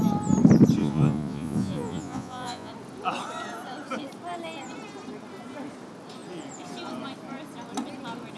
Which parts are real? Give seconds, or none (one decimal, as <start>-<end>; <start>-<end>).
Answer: 0.0-0.8; 2.7-8.4